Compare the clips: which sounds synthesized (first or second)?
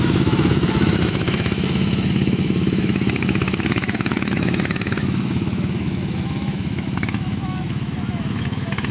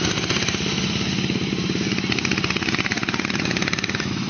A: first